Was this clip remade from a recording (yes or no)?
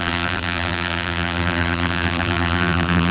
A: yes